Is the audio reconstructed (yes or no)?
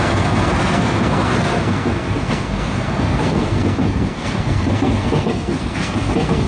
yes